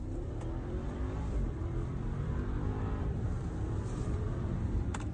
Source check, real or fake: fake